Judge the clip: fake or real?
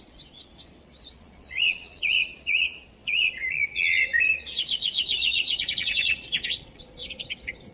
fake